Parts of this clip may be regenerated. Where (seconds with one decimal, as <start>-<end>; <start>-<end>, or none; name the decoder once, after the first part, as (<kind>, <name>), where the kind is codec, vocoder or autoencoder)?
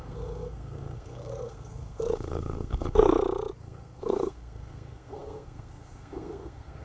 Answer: 0.0-3.1 (codec, SNAC); 3.6-6.8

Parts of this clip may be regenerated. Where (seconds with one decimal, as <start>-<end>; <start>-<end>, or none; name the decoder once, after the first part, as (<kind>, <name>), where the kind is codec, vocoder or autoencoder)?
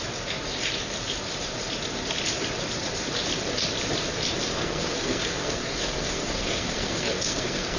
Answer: 4.6-7.8 (codec, SNAC)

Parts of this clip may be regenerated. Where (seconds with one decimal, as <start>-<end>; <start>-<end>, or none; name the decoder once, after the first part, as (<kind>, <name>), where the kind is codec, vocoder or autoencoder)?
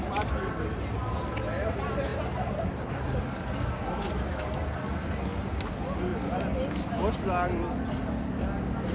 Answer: none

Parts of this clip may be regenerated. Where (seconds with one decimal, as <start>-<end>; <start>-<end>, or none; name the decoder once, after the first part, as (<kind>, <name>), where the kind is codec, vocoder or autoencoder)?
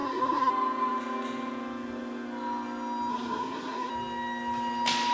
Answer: 0.0-0.5 (codec, SNAC); 3.1-3.9